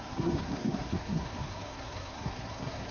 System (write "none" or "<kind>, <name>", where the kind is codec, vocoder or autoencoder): codec, SNAC